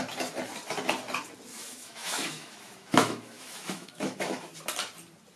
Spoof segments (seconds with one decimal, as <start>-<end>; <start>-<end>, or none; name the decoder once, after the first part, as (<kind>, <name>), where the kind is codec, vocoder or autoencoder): 1.5-4.5 (autoencoder, DAC-VAE)

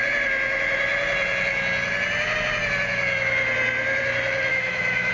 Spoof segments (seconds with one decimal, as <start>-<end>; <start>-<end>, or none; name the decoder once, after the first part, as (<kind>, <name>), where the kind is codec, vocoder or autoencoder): 4.5-5.1 (autoencoder, DAC-VAE)

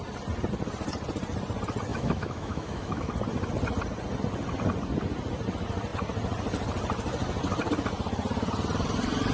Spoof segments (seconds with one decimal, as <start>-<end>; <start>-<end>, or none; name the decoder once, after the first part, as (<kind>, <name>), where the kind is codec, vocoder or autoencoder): 1.9-3.1 (autoencoder, DAC-VAE)

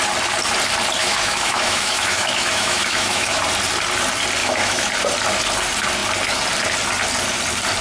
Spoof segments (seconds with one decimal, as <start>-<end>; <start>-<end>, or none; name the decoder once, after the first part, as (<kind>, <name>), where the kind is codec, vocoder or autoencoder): 1.0-3.4 (autoencoder, DAC-VAE); 4.4-4.9